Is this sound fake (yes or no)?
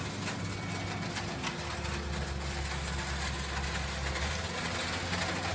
no